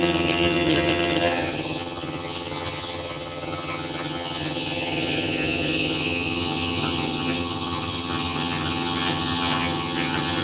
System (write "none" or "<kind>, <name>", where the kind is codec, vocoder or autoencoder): vocoder, HiFi-GAN